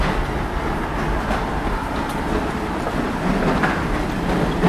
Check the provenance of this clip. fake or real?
real